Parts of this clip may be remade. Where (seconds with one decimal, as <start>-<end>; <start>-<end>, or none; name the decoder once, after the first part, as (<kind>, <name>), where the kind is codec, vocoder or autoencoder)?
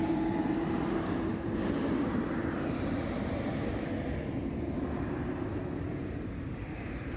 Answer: 0.0-5.5 (vocoder, BigVGAN v2)